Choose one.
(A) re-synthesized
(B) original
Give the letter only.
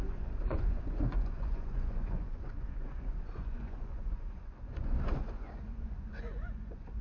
A